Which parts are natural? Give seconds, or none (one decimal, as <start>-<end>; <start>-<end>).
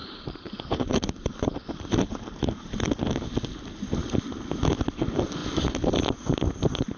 2.8-7.0